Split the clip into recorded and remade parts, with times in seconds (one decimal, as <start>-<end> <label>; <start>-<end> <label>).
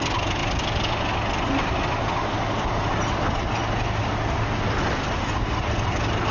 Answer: 0.0-6.3 recorded